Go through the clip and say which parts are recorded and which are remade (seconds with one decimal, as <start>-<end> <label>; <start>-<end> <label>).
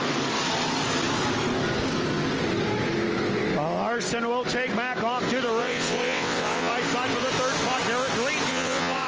0.0-5.6 recorded; 5.6-6.7 remade; 6.7-8.5 recorded; 8.5-9.1 remade